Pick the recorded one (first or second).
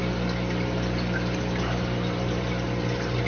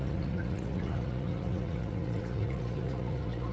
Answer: first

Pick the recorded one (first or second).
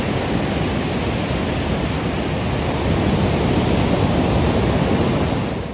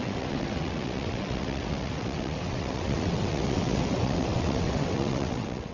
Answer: first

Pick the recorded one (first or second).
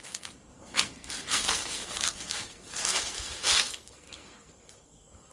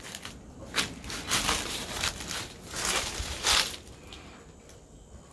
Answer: second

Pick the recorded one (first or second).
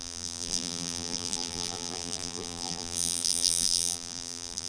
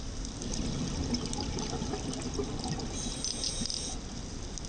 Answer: second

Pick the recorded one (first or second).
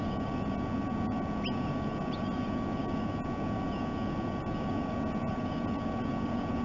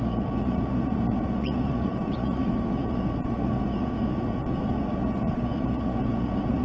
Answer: first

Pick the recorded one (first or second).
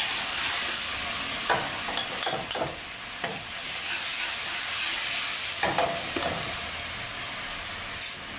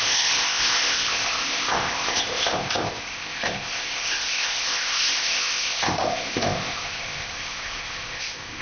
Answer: first